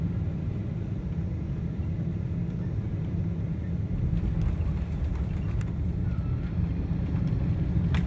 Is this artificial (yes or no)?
no